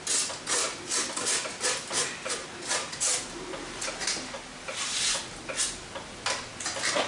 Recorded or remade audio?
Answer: recorded